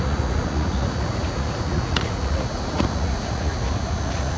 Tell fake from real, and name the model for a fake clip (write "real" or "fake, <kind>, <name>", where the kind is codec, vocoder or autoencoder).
fake, vocoder, Vocos